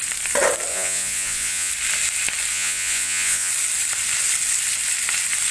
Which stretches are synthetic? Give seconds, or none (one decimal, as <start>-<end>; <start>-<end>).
0.7-1.7; 2.5-3.5